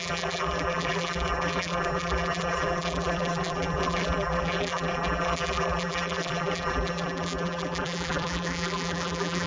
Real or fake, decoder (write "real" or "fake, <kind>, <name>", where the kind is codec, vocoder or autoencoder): fake, vocoder, BigVGAN v2